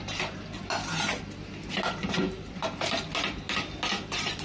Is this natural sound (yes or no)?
yes